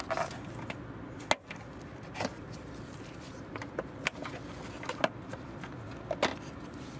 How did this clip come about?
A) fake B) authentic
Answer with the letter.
B